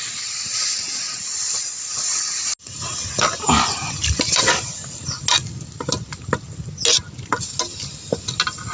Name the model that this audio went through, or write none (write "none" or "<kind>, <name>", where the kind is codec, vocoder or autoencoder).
none